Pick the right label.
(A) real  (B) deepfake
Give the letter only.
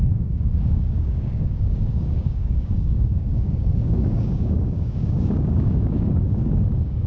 B